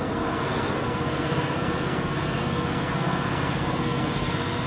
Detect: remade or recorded remade